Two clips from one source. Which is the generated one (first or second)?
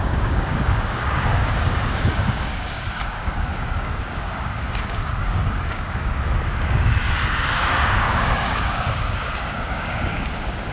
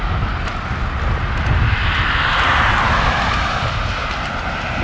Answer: first